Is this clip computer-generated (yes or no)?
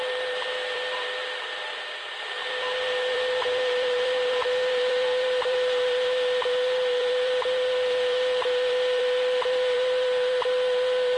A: yes